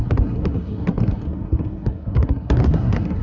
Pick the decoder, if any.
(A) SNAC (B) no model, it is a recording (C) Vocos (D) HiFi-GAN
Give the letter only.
A